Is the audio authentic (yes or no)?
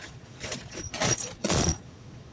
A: no